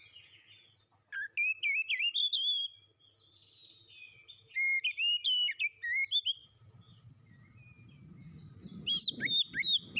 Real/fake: real